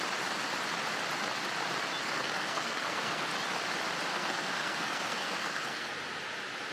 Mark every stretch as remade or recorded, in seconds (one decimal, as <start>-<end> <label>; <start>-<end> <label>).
0.0-2.0 recorded; 2.0-3.3 remade; 3.3-4.1 recorded; 4.1-5.9 remade; 5.9-6.7 recorded